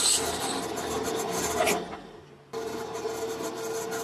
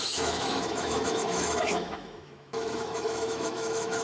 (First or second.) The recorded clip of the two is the first